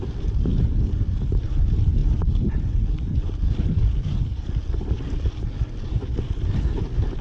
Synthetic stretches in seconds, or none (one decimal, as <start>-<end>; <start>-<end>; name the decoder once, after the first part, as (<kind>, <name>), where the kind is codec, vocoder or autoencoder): none